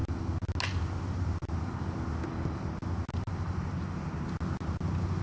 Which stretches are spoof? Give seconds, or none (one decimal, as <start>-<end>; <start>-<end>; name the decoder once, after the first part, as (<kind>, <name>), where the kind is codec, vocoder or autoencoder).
none